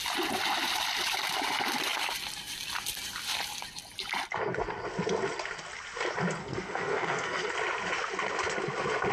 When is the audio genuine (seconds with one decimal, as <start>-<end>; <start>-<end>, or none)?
0.0-6.4; 7.5-9.1